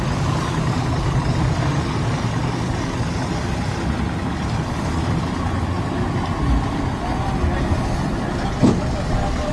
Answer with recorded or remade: recorded